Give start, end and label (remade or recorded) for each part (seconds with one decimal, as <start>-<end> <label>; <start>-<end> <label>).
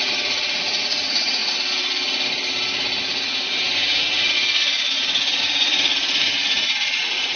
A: 0.0-1.4 remade; 1.4-5.4 recorded; 5.4-7.4 remade